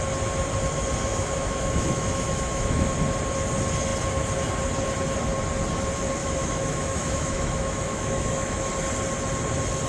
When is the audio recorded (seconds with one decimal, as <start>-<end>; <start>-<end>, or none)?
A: 0.0-1.1; 2.9-6.2; 8.7-9.9